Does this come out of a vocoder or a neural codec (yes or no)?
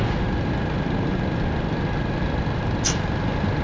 no